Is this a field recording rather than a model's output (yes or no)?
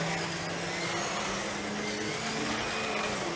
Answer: yes